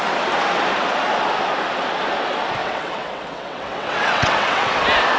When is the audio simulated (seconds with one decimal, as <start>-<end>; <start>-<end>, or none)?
2.6-4.7